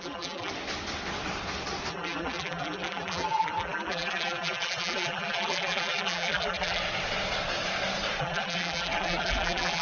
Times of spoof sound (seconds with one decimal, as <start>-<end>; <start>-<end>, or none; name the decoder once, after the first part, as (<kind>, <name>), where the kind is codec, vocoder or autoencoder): 0.0-0.5 (vocoder, BigVGAN v2); 1.9-6.8; 8.2-9.8